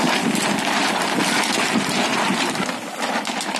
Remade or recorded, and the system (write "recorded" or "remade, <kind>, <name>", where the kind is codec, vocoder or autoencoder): recorded